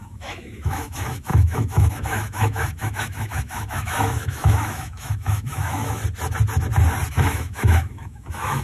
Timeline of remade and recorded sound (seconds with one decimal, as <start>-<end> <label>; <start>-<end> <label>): 0.0-6.0 remade; 6.0-7.1 recorded; 7.1-8.6 remade